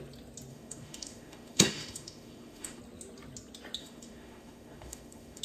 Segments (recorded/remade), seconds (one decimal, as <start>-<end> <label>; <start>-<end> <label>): 0.0-0.5 recorded; 0.5-2.8 remade; 2.8-3.8 recorded; 3.8-5.4 remade